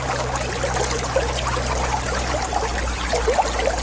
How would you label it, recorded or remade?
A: recorded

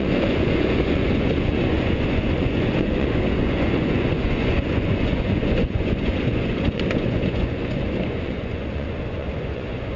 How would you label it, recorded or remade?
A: remade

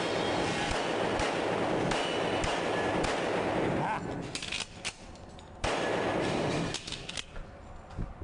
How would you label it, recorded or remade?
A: recorded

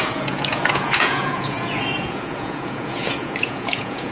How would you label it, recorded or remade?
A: remade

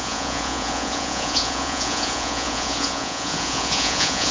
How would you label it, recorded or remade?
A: remade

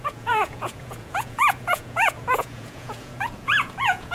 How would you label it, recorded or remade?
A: remade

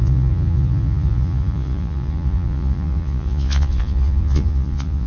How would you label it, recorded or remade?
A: remade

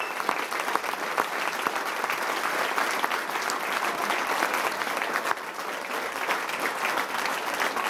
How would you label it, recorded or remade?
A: recorded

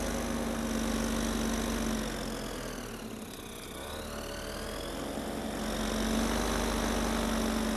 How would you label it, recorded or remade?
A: recorded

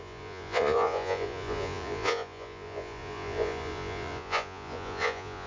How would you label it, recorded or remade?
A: remade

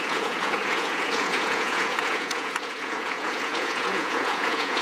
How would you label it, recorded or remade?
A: remade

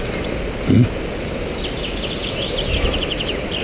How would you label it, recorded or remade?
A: recorded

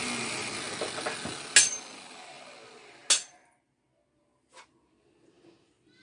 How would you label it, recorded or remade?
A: recorded